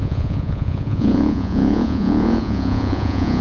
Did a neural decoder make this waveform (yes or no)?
yes